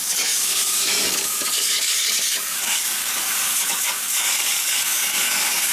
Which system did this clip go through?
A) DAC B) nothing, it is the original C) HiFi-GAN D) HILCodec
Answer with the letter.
A